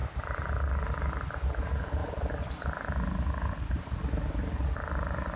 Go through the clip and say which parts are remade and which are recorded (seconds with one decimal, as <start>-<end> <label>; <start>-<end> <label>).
0.0-5.4 recorded